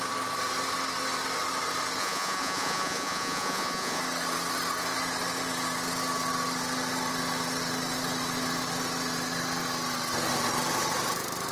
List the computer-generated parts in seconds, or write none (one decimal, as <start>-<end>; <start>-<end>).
2.0-4.0